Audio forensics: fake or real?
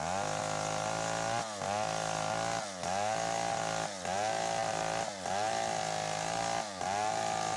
real